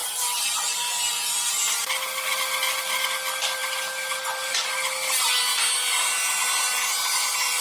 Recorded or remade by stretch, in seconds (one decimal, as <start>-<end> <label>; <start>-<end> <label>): 0.0-1.5 remade; 1.5-7.6 recorded